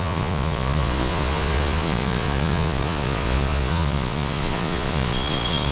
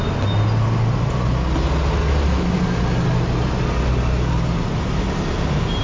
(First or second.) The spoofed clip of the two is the first